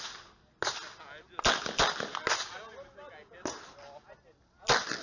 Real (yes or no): yes